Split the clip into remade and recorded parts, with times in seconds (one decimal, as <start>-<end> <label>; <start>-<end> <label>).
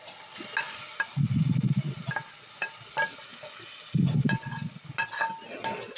0.0-6.0 recorded